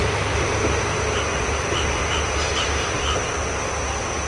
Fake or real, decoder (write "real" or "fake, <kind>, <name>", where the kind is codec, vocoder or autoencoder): real